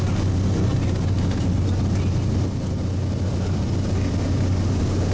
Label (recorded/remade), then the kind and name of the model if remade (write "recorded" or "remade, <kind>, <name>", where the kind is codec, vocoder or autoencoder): recorded